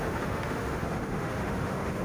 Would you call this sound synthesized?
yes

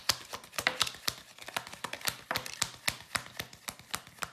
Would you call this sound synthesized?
no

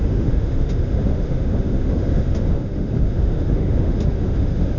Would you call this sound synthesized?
yes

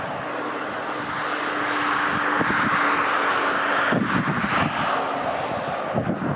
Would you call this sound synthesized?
no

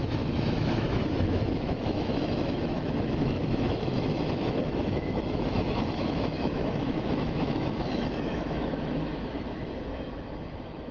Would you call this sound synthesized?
yes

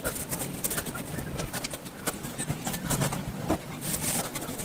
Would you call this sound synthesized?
no